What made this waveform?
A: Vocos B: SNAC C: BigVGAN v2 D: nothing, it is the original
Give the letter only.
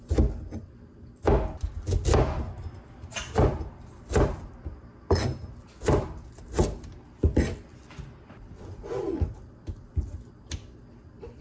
D